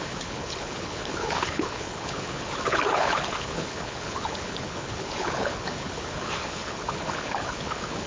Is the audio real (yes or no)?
no